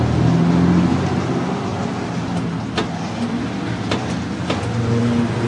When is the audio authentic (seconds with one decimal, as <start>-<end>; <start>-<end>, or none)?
0.0-5.5